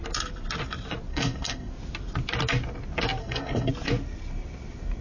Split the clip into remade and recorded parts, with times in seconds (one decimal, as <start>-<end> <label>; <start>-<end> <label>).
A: 0.0-1.1 recorded; 1.1-1.7 remade; 1.7-3.2 recorded; 3.2-3.7 remade; 3.7-5.0 recorded